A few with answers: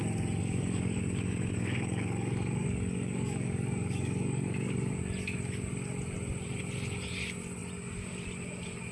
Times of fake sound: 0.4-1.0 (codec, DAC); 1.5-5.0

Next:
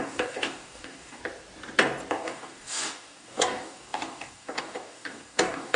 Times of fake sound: 0.0-1.2 (codec, DAC); 2.1-5.8